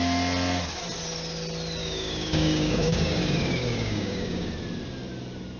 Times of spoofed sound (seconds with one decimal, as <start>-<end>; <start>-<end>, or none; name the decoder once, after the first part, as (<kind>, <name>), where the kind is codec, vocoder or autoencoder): 1.8-4.5 (codec, DAC)